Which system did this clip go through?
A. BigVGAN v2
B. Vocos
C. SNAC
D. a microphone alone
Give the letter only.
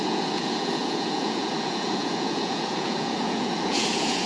B